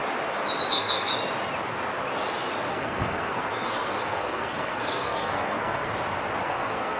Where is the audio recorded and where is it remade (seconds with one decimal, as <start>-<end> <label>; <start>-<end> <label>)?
0.0-0.7 recorded; 0.7-1.1 remade; 1.1-2.7 recorded; 2.7-5.9 remade; 5.9-6.4 recorded; 6.4-7.0 remade